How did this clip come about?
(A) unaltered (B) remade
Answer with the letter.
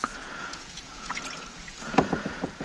B